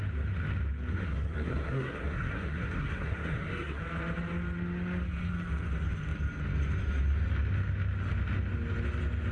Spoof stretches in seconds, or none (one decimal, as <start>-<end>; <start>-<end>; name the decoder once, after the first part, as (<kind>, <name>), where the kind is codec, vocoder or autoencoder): 0.9-3.8 (codec, SNAC)